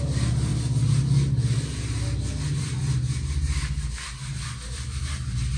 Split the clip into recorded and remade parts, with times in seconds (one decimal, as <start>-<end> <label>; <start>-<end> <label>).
0.0-5.6 recorded